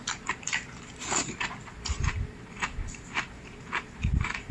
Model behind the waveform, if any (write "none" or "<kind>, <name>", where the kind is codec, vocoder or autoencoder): vocoder, BigVGAN v2